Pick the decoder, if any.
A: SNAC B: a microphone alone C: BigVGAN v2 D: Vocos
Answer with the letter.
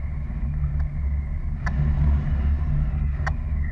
B